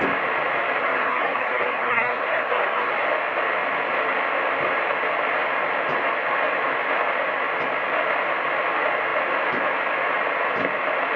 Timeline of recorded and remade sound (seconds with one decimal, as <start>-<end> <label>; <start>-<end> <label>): 0.0-0.8 recorded; 0.8-2.9 remade; 2.9-11.2 recorded